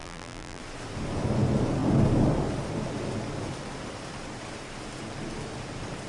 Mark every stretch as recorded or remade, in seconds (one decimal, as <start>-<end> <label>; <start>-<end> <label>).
0.0-0.6 remade; 0.6-6.1 recorded